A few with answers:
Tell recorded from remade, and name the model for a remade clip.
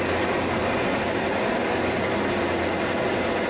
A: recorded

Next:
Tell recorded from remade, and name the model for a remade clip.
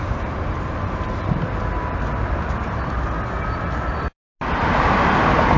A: recorded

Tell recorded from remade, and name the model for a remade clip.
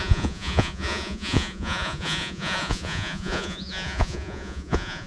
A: remade, vocoder, Vocos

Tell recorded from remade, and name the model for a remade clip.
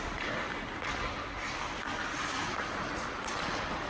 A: recorded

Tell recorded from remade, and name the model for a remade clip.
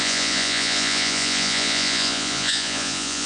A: remade, vocoder, Vocos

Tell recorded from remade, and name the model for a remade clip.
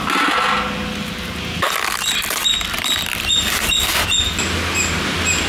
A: recorded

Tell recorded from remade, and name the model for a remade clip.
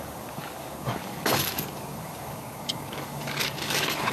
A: remade, codec, DAC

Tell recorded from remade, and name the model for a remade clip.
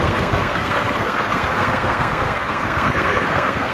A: remade, codec, SNAC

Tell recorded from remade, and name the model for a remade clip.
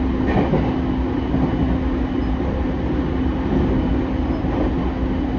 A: recorded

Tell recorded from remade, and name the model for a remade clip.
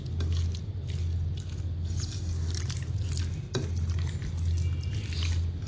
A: recorded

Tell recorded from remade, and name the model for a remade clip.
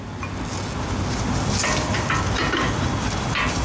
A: recorded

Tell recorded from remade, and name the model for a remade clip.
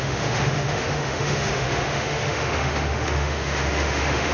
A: remade, autoencoder, DAC-VAE